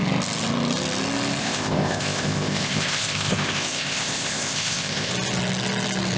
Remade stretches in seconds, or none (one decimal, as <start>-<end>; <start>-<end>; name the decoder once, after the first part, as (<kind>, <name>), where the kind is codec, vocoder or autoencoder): 1.4-5.1 (codec, ZipCodec)